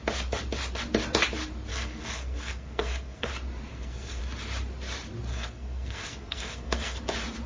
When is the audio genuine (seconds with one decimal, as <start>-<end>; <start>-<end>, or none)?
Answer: 0.0-1.7; 3.3-3.7; 4.2-5.3; 7.0-7.5